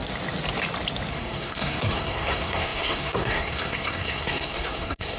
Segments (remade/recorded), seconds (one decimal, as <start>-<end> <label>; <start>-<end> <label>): 0.0-1.1 recorded; 1.1-5.2 remade